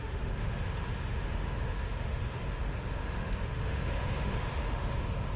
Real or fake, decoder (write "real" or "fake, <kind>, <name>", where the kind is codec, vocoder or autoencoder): fake, autoencoder, DAC-VAE